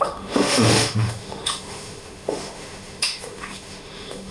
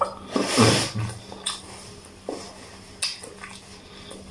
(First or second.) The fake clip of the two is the first